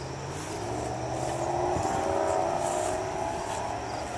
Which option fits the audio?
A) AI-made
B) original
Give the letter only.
B